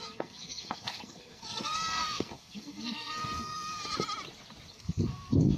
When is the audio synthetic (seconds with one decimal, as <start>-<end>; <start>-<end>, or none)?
0.0-3.8; 4.7-5.6